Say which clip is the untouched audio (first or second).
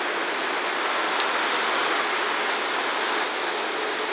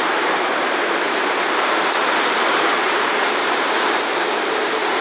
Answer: first